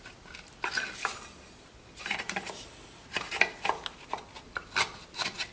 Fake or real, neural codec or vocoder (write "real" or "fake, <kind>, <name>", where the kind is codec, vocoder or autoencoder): real